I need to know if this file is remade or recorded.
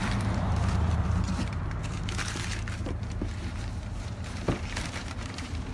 remade